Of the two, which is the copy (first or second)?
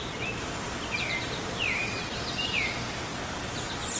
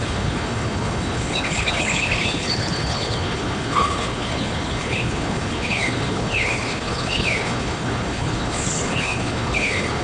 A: second